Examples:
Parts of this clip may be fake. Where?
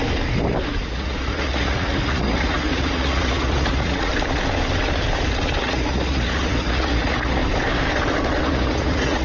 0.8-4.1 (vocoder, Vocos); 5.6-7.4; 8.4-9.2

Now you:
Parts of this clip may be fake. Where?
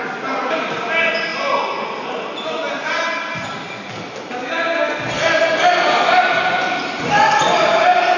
none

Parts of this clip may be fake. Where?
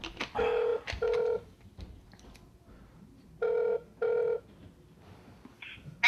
none